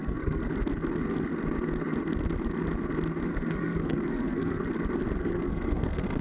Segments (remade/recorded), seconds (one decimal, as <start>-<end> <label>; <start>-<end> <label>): 0.0-0.5 remade; 0.5-3.3 recorded; 3.3-4.6 remade; 4.6-5.2 recorded; 5.2-6.2 remade

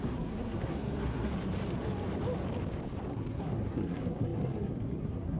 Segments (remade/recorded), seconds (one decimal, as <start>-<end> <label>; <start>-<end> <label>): 0.0-1.3 remade; 1.3-3.1 recorded; 3.1-5.4 remade

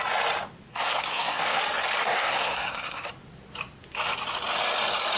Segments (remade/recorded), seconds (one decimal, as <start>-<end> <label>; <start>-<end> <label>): 0.0-0.7 recorded; 0.7-1.6 remade; 1.6-2.0 recorded; 2.0-3.1 remade; 3.1-5.2 recorded

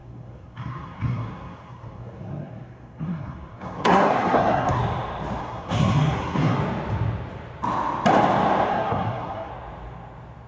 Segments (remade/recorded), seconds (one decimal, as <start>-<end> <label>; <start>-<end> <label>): 0.0-4.8 remade; 4.8-5.4 recorded; 5.4-6.6 remade; 6.6-8.7 recorded; 8.7-9.5 remade; 9.5-10.5 recorded

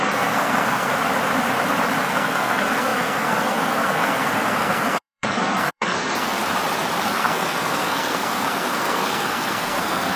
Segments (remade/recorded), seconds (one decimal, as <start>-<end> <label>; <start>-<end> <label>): 0.0-0.9 remade; 0.9-2.0 recorded; 2.0-6.4 remade; 6.4-7.0 recorded; 7.0-10.2 remade

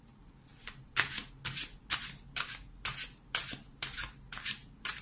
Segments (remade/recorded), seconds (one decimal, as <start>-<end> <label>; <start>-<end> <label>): 0.0-5.0 recorded

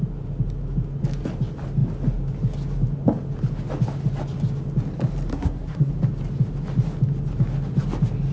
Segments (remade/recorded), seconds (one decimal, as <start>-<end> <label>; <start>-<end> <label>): 0.0-5.3 recorded; 5.3-5.9 remade; 5.9-8.3 recorded